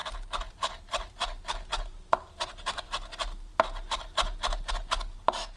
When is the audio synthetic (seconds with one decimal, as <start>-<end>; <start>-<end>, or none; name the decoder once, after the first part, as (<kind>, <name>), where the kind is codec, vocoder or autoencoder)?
none